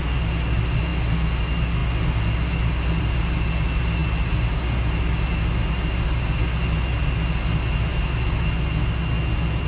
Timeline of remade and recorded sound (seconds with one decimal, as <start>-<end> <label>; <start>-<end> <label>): 0.0-9.7 recorded